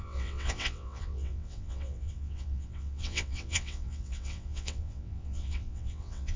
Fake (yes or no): yes